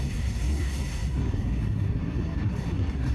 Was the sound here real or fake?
fake